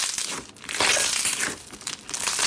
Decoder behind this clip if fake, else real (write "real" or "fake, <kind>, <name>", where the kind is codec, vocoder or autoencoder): real